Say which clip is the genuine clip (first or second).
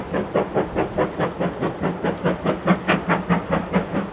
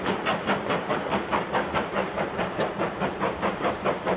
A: first